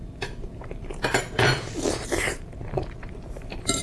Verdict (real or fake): fake